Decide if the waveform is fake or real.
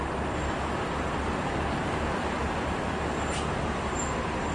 real